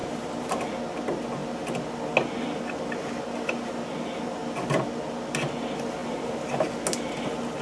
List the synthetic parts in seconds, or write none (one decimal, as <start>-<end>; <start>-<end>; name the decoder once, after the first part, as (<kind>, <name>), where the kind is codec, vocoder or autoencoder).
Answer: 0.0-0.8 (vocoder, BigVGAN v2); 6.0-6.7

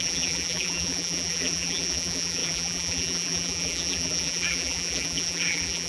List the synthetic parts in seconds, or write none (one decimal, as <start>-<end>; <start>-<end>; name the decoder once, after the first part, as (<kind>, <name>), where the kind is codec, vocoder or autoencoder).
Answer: 0.0-5.9 (vocoder, BigVGAN v2)

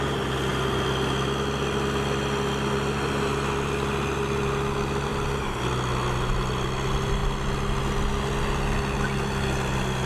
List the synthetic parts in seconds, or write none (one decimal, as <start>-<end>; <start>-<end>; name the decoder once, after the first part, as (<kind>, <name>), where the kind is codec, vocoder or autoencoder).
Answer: none

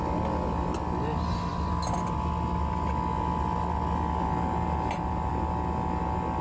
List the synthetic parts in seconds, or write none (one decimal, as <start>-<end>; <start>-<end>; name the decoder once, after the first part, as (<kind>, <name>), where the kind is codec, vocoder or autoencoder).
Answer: none

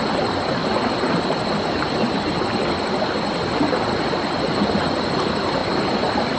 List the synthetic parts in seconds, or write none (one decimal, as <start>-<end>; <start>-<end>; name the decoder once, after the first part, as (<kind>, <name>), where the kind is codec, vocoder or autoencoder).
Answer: none